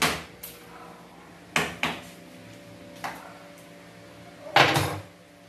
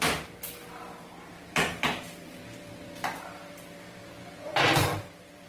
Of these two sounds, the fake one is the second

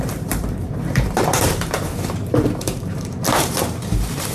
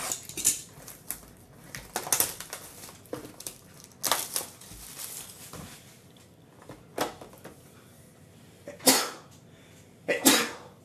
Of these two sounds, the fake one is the first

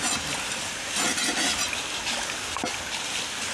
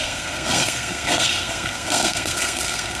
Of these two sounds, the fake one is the second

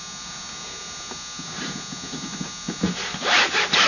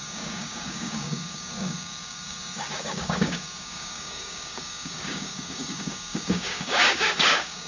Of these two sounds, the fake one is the second